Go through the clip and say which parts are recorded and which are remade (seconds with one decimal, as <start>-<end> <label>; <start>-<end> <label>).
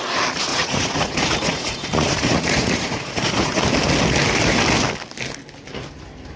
0.0-0.5 recorded; 0.5-3.6 remade; 3.6-6.4 recorded